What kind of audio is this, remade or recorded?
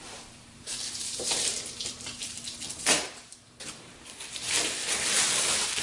remade